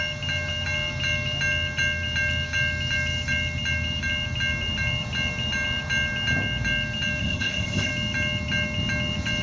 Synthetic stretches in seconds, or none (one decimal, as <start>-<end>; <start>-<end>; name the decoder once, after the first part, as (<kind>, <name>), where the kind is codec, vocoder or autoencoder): 7.2-7.9 (codec, ZipCodec)